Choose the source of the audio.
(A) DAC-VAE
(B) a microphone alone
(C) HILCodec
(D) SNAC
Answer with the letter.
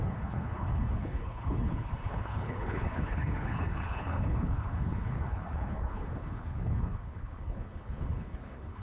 C